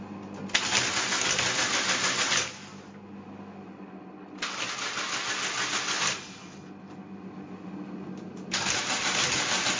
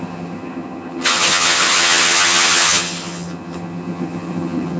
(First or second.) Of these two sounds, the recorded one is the first